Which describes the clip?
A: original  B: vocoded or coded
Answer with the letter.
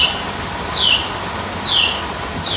A